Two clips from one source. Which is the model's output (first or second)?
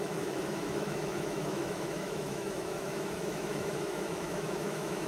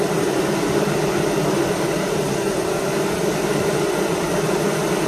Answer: first